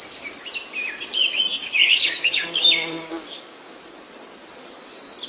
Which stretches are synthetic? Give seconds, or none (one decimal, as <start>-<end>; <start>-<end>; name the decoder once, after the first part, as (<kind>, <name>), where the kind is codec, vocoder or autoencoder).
1.2-3.8 (codec, DAC)